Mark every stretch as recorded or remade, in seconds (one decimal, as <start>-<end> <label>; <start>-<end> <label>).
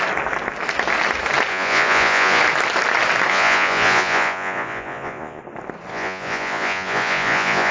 0.0-1.5 recorded; 1.5-2.4 remade; 2.4-3.3 recorded; 3.3-5.4 remade; 5.4-5.9 recorded; 5.9-7.7 remade